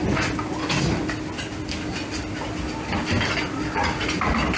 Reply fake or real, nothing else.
real